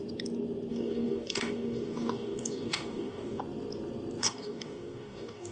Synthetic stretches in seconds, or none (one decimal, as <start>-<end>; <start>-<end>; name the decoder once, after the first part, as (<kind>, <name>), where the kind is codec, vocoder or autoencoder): 0.7-3.4 (codec, DAC); 4.2-5.5